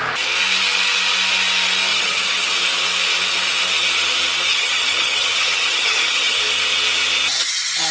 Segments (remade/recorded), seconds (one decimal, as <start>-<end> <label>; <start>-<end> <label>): 0.0-1.9 recorded; 1.9-2.5 remade; 2.5-4.5 recorded; 4.5-6.4 remade; 6.4-7.9 recorded